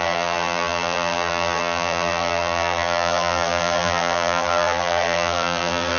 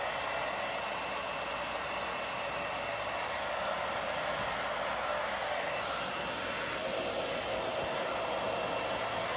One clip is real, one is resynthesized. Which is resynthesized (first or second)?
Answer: first